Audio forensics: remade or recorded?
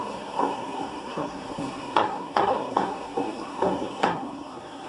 remade